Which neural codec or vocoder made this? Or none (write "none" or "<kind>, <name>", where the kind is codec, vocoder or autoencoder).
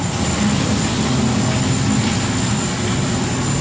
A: none